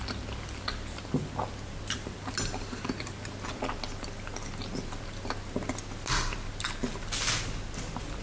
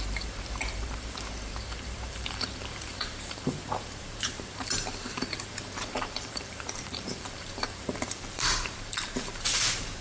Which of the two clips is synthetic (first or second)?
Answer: second